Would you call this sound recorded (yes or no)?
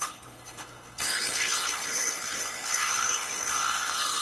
no